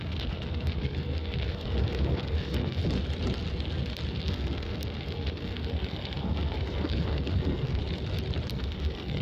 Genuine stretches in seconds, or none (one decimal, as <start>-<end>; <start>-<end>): 2.8-4.1; 7.8-8.5